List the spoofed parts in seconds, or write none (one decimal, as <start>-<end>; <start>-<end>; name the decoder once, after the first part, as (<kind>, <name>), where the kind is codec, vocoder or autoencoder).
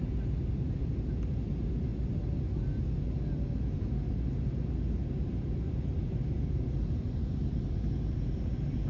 5.9-7.7 (vocoder, BigVGAN v2)